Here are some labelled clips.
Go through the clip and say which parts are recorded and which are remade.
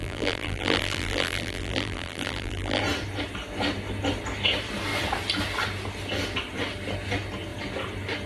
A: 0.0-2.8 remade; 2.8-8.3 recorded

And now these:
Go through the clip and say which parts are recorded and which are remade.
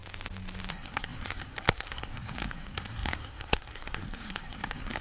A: 0.0-0.7 recorded; 0.7-5.0 remade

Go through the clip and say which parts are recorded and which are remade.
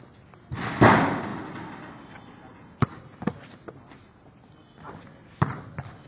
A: 0.0-6.1 recorded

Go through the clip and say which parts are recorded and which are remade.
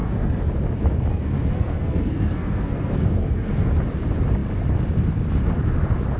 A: 0.0-0.5 remade; 0.5-1.1 recorded; 1.1-3.7 remade; 3.7-6.2 recorded